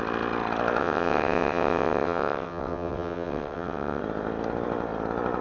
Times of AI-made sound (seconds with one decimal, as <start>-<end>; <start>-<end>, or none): 0.8-4.0